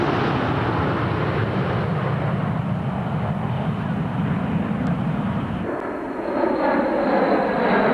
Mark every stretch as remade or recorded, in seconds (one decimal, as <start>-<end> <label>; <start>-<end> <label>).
0.0-7.9 recorded